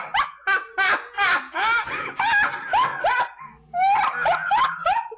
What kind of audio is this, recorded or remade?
recorded